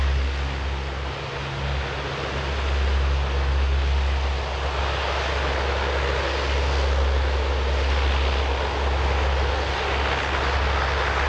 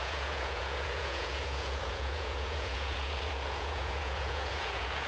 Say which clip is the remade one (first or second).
second